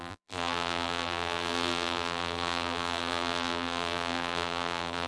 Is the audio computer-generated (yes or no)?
yes